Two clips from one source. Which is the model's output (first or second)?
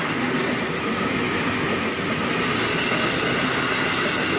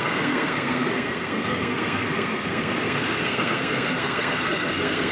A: second